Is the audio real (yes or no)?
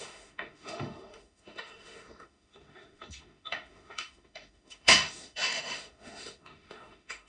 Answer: no